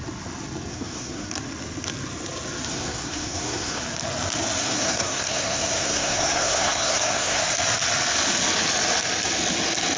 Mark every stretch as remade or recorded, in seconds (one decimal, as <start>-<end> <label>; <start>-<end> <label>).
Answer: 0.0-0.7 recorded; 0.7-1.3 remade; 1.3-2.7 recorded; 2.7-3.8 remade; 3.8-4.6 recorded; 4.6-7.4 remade; 7.4-10.0 recorded